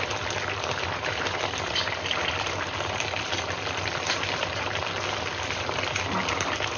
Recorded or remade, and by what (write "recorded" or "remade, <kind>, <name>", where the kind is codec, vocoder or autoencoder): recorded